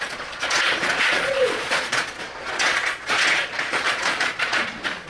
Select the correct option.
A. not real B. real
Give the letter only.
A